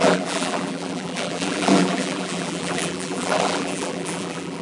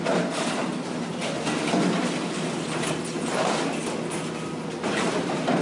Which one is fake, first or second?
first